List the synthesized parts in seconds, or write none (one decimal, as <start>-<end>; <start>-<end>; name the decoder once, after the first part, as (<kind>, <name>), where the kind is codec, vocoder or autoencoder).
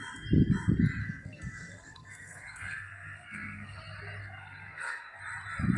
1.0-3.8 (codec, SNAC); 4.2-5.2